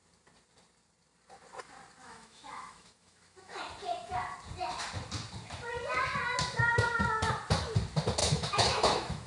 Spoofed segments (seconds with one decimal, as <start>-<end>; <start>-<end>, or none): 2.0-3.6; 8.2-9.3